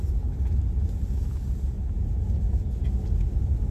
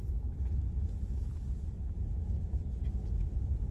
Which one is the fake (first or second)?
second